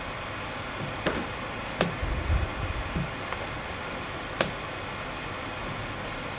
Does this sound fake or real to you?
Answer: real